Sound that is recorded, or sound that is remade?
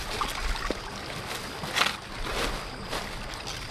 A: recorded